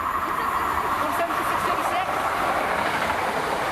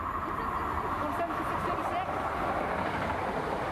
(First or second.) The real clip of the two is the second